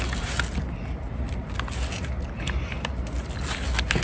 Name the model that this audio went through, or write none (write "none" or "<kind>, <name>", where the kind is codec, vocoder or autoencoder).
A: none